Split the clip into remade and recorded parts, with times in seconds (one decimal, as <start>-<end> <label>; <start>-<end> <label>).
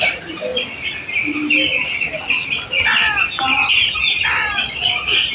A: 0.0-0.5 remade; 0.5-3.7 recorded; 3.7-5.3 remade